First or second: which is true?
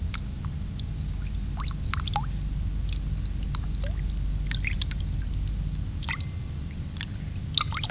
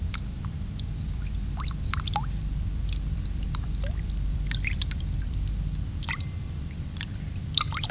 first